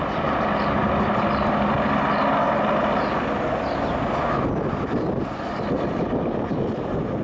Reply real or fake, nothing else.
real